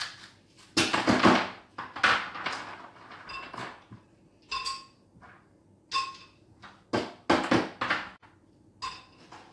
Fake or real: real